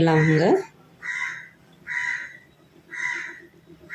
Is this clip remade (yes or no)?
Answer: no